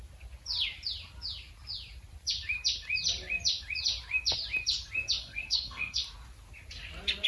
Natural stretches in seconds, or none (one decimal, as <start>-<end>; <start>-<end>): 0.0-5.2; 6.0-7.3